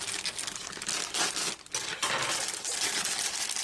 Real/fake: real